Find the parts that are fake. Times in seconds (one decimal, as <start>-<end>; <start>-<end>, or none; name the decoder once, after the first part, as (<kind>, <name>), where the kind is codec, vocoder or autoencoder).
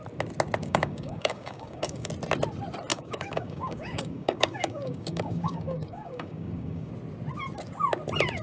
0.6-2.1 (codec, DAC); 2.9-6.9